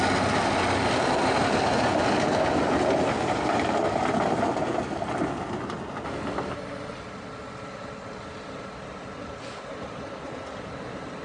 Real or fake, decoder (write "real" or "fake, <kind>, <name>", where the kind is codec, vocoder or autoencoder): real